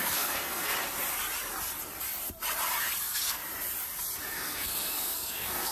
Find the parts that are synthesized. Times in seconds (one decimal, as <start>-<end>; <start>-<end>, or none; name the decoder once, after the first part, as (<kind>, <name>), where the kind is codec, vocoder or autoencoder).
0.0-0.7 (codec, SNAC); 3.0-3.4; 4.3-5.7